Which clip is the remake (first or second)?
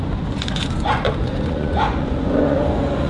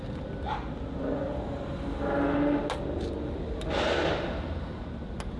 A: first